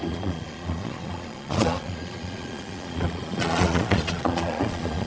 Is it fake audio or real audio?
fake